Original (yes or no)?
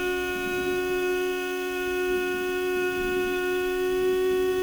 yes